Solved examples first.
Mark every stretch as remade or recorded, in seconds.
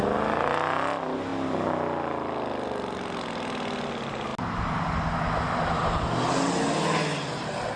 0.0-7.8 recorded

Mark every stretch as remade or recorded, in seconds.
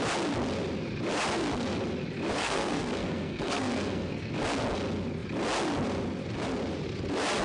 0.0-2.4 recorded; 2.4-4.3 remade; 4.3-7.4 recorded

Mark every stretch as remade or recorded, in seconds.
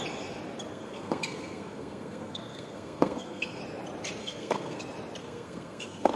0.0-0.7 recorded; 0.7-3.6 remade; 3.6-4.2 recorded; 4.2-4.8 remade; 4.8-5.2 recorded; 5.2-6.2 remade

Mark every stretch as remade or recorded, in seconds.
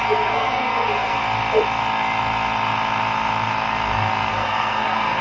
0.0-1.2 remade; 1.2-4.3 recorded; 4.3-5.2 remade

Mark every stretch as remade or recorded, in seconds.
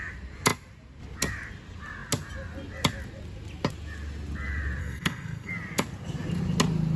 0.0-4.8 recorded; 4.8-5.5 remade; 5.5-7.0 recorded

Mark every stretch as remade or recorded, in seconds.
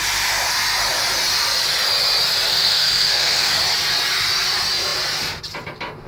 0.0-2.5 recorded; 2.5-3.6 remade; 3.6-6.1 recorded